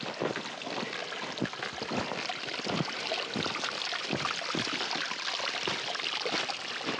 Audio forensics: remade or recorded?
recorded